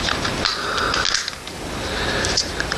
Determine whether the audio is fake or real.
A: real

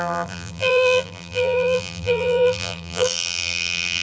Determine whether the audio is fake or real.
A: fake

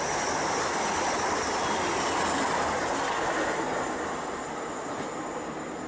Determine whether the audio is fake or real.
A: real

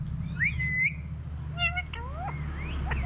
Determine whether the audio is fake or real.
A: real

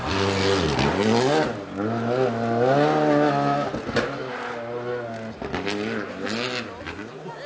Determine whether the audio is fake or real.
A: real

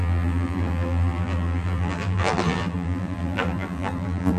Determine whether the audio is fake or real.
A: fake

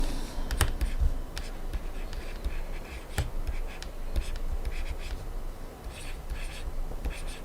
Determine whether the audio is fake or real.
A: real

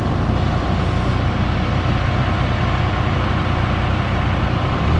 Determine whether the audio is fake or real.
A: real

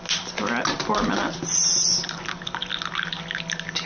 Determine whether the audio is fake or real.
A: real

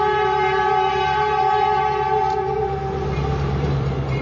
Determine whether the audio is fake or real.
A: fake